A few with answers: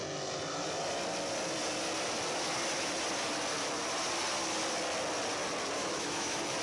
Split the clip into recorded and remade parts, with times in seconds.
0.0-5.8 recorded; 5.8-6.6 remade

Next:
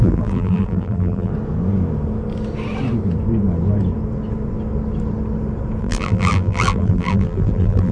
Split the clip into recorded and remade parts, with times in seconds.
0.0-1.3 remade; 1.3-5.8 recorded; 5.8-7.9 remade

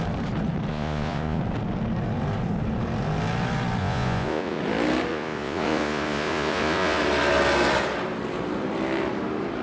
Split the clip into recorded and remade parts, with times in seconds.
0.0-0.7 recorded; 0.7-1.4 remade; 1.4-3.8 recorded; 3.8-4.6 remade; 4.6-5.1 recorded; 5.1-7.0 remade; 7.0-9.6 recorded